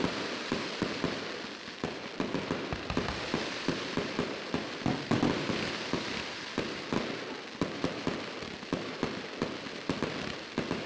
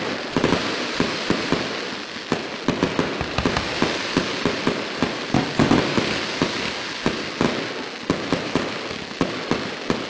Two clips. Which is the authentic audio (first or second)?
second